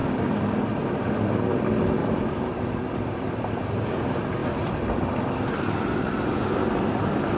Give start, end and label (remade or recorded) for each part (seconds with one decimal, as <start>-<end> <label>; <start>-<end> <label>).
0.0-1.5 remade; 1.5-2.0 recorded; 2.0-4.0 remade; 4.0-4.4 recorded; 4.4-6.6 remade; 6.6-7.4 recorded